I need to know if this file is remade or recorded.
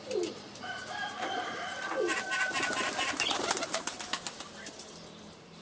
remade